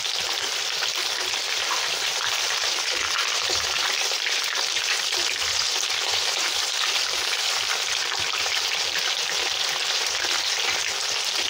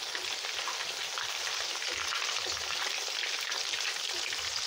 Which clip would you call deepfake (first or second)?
first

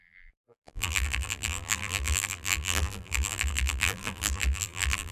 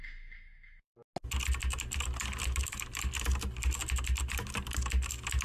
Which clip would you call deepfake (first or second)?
first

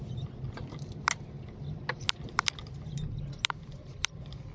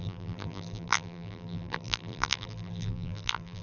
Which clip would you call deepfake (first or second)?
second